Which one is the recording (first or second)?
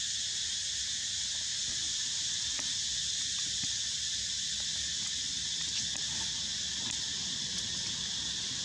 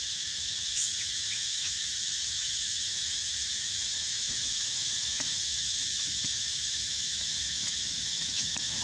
first